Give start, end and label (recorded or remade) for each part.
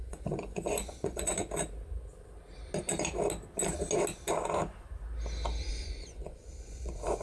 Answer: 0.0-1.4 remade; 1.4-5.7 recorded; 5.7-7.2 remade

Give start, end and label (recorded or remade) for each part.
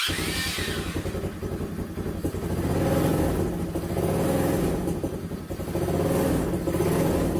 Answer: 0.0-7.4 recorded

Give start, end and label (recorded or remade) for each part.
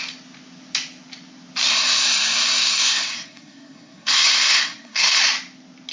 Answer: 0.0-1.7 recorded; 1.7-5.2 remade; 5.2-5.9 recorded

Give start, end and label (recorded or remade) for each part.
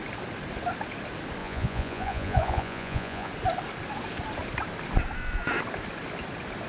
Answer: 0.0-1.4 recorded; 1.4-3.3 remade; 3.3-6.7 recorded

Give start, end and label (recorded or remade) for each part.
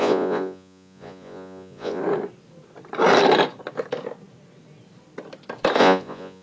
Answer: 0.0-2.0 remade; 2.0-5.8 recorded; 5.8-6.4 remade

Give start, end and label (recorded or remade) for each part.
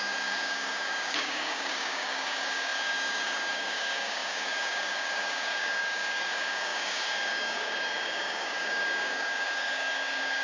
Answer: 0.0-10.4 remade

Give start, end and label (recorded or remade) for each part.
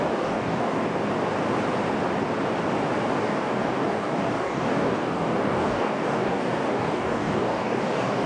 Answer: 0.0-0.8 remade; 0.8-3.2 recorded; 3.2-8.3 remade